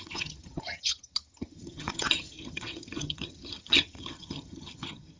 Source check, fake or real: fake